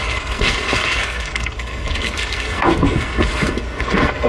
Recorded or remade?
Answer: remade